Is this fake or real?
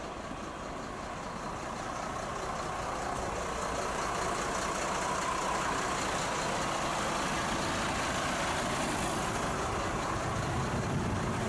real